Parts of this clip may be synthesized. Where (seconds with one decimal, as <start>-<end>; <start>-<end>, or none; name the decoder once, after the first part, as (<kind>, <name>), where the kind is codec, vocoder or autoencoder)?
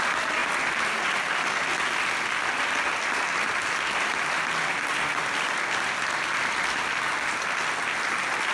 none